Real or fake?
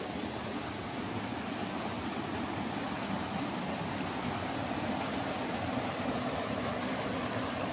real